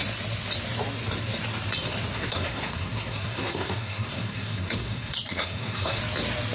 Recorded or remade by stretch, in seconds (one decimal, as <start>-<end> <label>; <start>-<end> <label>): 0.0-2.1 recorded; 2.1-6.0 remade; 6.0-6.5 recorded

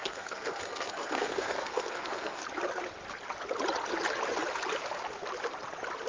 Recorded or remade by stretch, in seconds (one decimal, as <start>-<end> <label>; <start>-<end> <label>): 0.0-2.4 remade; 2.4-6.1 recorded

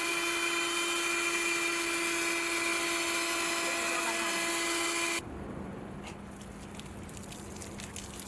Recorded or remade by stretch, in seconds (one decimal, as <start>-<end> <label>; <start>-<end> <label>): 0.0-8.3 recorded

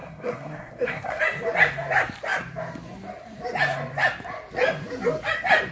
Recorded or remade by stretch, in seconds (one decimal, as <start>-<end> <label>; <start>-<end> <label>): 0.0-1.2 remade; 1.2-5.7 recorded

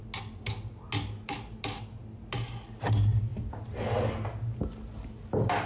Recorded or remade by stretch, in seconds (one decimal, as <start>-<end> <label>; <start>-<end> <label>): 0.0-5.7 recorded

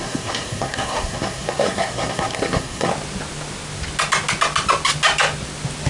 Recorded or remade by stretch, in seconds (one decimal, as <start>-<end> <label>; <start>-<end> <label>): 0.0-2.9 remade; 2.9-5.9 recorded

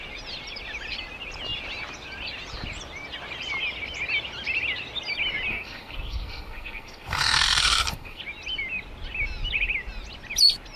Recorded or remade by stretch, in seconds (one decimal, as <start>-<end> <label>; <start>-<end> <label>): 0.0-5.5 recorded; 5.5-8.2 remade; 8.2-10.8 recorded